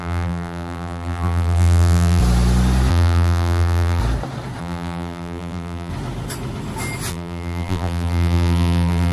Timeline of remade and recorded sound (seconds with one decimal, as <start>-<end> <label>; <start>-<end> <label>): 0.0-2.2 remade; 2.2-2.9 recorded; 2.9-4.0 remade; 4.0-4.6 recorded; 4.6-5.9 remade; 5.9-7.1 recorded; 7.1-9.1 remade